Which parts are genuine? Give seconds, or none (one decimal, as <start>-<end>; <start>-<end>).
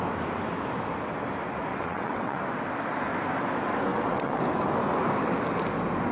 0.0-1.7; 2.4-3.9; 4.4-6.1